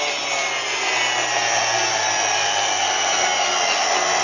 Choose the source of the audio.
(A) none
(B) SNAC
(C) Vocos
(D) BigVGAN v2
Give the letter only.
A